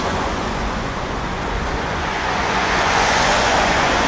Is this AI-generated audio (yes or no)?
yes